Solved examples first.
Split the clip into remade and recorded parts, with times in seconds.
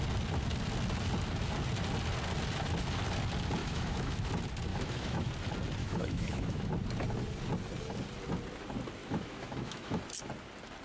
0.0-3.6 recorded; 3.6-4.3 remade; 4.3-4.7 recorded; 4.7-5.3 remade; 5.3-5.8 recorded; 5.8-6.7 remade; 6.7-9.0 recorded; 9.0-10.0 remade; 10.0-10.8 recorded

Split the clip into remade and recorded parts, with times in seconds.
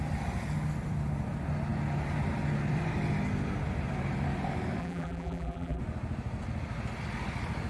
0.0-4.8 recorded; 4.8-5.8 remade; 5.8-7.7 recorded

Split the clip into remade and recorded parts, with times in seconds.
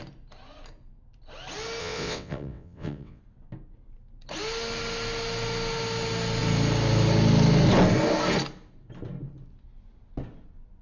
0.0-1.8 recorded; 1.8-3.2 remade; 3.2-10.8 recorded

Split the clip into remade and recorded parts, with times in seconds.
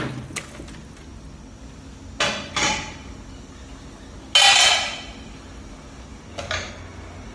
0.0-6.1 recorded; 6.1-6.7 remade; 6.7-7.3 recorded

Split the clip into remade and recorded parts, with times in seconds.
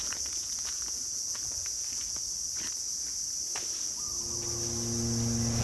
0.0-2.2 remade; 2.2-5.6 recorded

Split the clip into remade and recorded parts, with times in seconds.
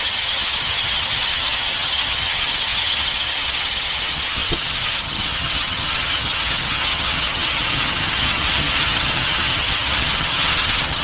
0.0-11.0 remade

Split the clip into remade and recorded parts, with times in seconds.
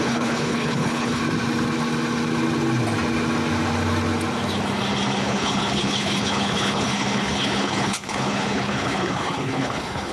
0.0-1.2 remade; 1.2-5.2 recorded; 5.2-10.1 remade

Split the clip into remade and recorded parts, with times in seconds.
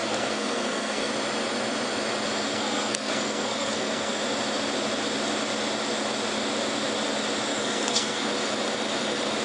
0.0-1.1 remade; 1.1-2.5 recorded; 2.5-4.2 remade; 4.2-7.5 recorded; 7.5-8.3 remade; 8.3-9.4 recorded